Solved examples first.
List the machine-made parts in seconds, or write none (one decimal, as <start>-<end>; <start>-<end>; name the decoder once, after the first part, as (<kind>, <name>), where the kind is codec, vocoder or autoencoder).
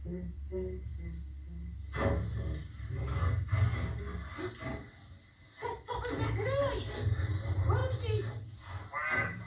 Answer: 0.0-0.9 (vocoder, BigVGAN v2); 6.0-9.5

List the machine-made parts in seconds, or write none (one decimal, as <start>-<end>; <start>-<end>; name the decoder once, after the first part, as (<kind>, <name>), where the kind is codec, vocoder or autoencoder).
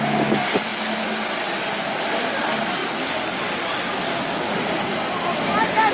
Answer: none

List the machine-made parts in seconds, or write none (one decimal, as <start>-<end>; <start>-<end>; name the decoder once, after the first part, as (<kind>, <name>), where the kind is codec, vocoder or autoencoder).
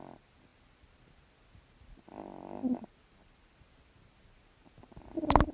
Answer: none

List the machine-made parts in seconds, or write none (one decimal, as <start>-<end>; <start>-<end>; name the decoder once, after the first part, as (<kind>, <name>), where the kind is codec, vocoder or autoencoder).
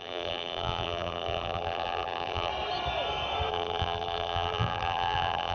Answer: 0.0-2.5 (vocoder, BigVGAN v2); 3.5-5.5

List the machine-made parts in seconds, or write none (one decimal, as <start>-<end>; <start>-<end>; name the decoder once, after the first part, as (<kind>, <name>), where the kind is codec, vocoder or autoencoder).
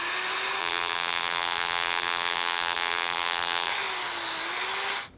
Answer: 0.6-3.7 (vocoder, BigVGAN v2)